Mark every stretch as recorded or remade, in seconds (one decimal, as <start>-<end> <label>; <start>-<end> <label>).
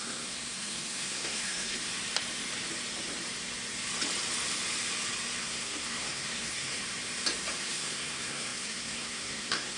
0.0-1.9 remade; 1.9-5.4 recorded; 5.4-6.8 remade; 6.8-7.6 recorded; 7.6-9.8 remade